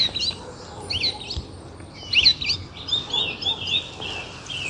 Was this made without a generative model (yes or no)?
yes